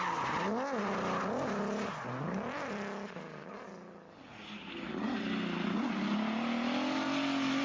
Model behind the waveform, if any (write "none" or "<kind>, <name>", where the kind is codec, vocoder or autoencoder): none